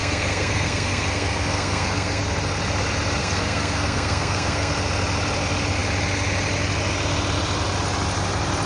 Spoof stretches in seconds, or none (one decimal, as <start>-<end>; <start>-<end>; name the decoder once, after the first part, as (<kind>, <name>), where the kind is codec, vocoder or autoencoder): 0.0-2.2 (codec, SNAC); 3.2-4.7